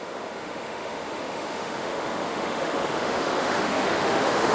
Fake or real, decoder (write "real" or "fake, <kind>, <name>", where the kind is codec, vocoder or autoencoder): fake, autoencoder, DAC-VAE